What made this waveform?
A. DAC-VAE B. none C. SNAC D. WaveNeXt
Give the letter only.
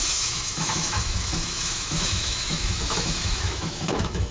A